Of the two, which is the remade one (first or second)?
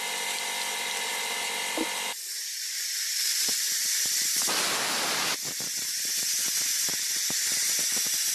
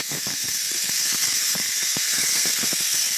second